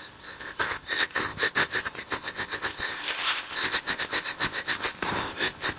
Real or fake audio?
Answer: fake